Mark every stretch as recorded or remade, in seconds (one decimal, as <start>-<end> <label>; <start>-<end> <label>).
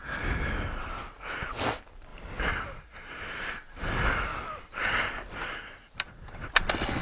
0.0-7.0 recorded